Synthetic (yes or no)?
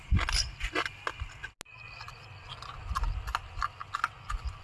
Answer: no